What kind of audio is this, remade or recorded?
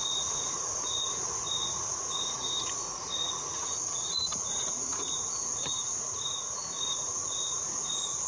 remade